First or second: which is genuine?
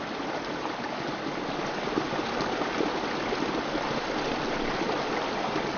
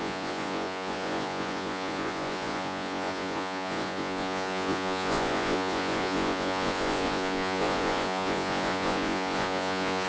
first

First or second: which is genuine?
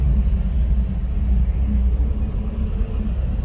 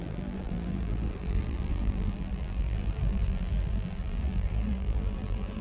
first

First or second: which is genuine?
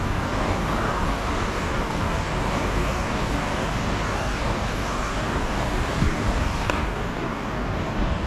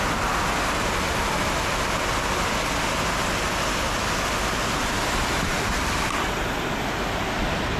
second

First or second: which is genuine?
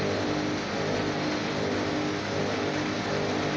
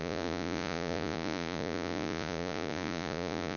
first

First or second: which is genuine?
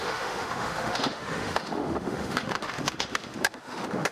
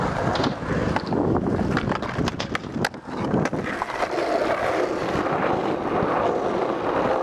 second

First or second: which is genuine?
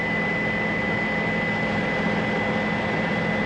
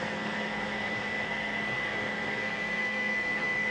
first